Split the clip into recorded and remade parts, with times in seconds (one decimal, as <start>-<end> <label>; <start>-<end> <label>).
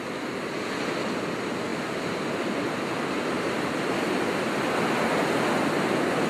0.0-6.3 recorded